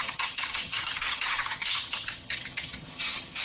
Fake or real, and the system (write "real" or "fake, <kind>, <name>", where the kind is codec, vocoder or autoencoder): fake, vocoder, HiFi-GAN